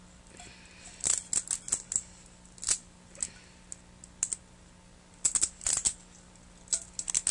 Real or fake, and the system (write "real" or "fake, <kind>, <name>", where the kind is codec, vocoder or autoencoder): real